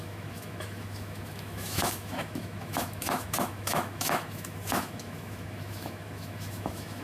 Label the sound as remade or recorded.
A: remade